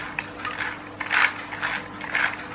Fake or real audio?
real